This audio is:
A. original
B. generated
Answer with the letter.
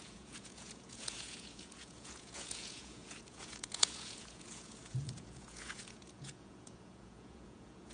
B